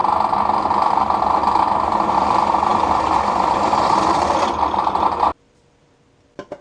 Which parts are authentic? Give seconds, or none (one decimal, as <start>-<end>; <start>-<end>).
0.0-2.1